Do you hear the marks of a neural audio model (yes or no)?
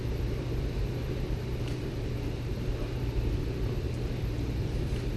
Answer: yes